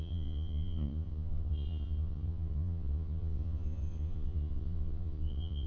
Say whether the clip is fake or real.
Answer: fake